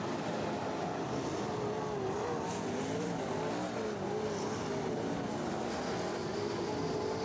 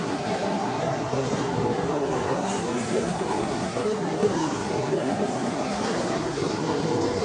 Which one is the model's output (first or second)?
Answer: second